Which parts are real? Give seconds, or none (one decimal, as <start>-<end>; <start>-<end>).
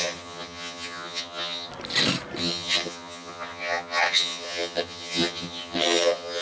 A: 1.7-2.4